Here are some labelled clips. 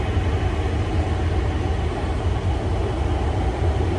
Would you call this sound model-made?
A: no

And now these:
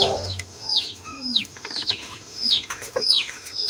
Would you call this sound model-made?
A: yes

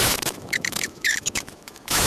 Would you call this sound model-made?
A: yes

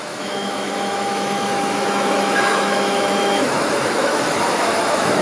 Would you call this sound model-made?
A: yes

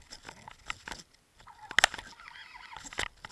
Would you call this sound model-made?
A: no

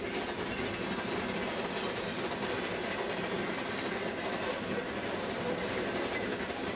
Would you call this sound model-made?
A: no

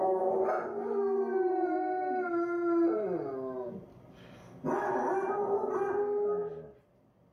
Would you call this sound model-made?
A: no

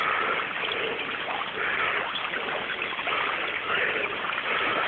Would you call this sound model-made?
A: no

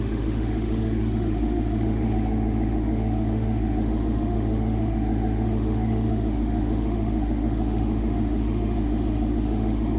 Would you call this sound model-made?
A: yes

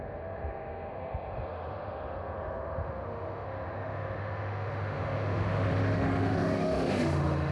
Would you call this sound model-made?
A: yes